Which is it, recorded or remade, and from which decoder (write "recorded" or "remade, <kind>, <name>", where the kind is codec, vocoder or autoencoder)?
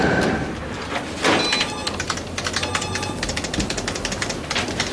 recorded